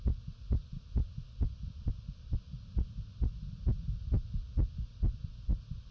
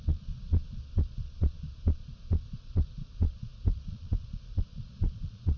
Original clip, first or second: first